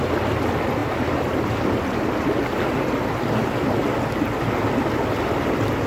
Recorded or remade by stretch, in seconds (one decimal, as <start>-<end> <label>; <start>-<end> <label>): 0.0-5.9 recorded